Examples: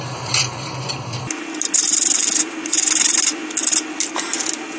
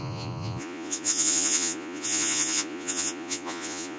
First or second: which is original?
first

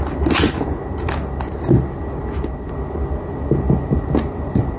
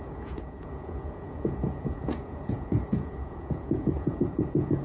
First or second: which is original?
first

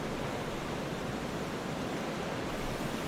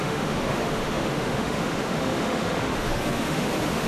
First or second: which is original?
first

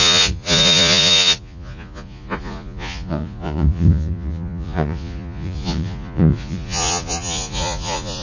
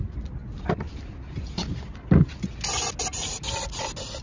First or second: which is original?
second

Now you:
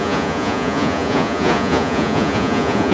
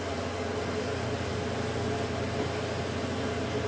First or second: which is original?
second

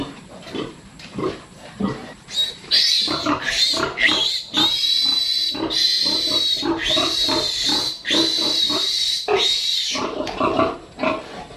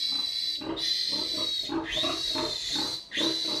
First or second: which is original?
second